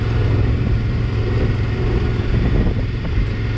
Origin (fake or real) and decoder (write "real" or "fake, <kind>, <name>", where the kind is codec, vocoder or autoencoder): fake, vocoder, BigVGAN v2